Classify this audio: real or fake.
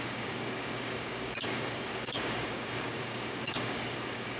fake